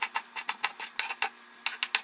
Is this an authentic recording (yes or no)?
yes